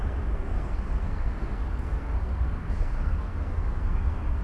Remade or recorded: remade